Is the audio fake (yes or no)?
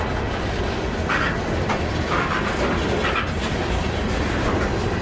no